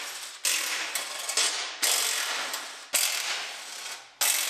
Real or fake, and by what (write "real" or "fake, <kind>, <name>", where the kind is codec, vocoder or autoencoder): real